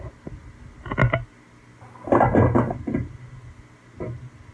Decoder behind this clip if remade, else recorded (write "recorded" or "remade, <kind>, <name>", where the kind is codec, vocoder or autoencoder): recorded